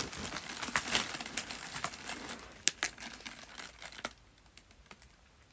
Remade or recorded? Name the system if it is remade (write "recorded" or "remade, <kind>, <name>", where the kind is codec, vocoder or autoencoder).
recorded